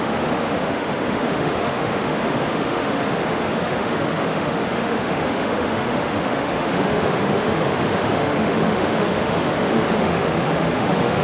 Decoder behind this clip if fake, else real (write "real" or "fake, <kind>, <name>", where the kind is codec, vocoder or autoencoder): fake, autoencoder, DAC-VAE